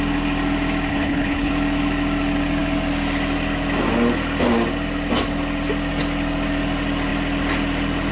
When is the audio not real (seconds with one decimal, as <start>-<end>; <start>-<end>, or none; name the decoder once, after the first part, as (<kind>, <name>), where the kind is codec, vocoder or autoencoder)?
0.9-1.5 (codec, HILCodec)